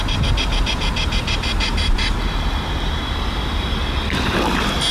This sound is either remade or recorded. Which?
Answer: recorded